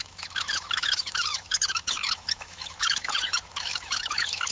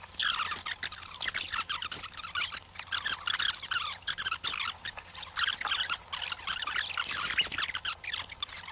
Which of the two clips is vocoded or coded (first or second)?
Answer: first